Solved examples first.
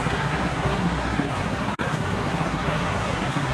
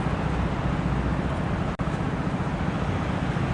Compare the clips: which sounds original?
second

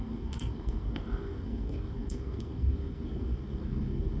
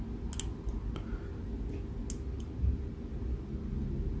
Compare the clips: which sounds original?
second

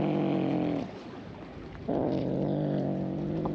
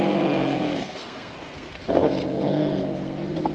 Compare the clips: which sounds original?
first